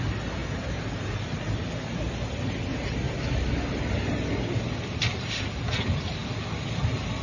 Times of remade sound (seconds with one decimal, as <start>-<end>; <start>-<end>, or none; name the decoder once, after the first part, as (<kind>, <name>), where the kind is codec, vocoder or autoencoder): none